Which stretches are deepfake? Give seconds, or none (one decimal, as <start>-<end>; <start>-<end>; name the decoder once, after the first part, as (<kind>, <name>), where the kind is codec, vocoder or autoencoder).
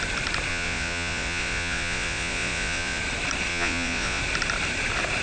0.5-3.0 (vocoder, Vocos); 3.5-4.2